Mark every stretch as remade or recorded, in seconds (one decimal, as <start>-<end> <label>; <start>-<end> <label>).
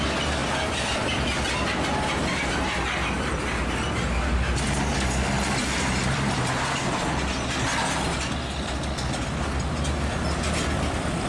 0.0-5.6 recorded; 5.6-6.4 remade; 6.4-11.3 recorded